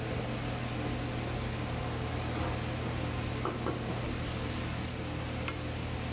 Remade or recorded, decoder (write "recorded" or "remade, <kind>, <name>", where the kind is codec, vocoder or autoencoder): recorded